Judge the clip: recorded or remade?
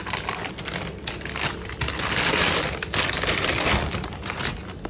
recorded